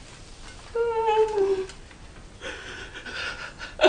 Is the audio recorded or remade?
recorded